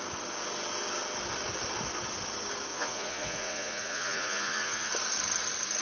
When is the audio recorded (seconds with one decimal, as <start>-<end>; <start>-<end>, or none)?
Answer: 0.0-2.7; 4.9-5.8